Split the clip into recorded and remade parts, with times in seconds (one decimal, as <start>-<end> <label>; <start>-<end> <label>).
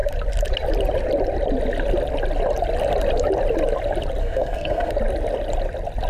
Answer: 0.0-4.2 recorded; 4.2-4.9 remade; 4.9-6.1 recorded